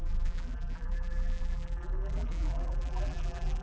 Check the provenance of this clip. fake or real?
fake